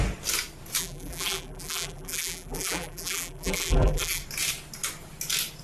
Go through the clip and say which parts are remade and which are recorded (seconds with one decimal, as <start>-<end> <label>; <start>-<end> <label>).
0.0-0.8 recorded; 0.8-4.2 remade; 4.2-5.6 recorded